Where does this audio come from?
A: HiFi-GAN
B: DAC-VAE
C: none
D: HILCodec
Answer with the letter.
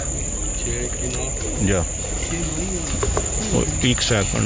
C